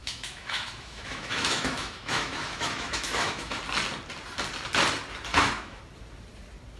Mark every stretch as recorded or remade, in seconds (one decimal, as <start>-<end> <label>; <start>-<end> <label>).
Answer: 0.0-3.6 remade; 3.6-5.3 recorded; 5.3-5.8 remade; 5.8-6.8 recorded